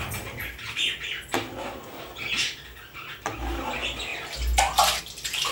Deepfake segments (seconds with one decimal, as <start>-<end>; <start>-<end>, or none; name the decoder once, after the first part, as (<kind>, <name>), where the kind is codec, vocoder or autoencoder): none